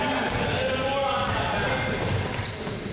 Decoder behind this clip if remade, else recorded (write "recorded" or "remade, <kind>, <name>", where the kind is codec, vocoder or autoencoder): recorded